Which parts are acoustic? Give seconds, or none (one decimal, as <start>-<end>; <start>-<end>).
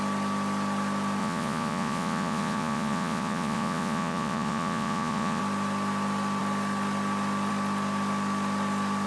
0.0-1.2; 5.4-9.1